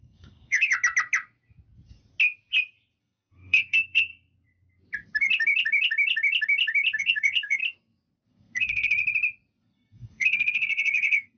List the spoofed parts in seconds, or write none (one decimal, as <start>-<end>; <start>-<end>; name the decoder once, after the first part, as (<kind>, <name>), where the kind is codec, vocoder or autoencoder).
0.0-0.7 (codec, SNAC); 3.0-4.1; 7.0-7.6; 8.3-9.0; 9.6-11.4